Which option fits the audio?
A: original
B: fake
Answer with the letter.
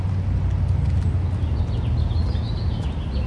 A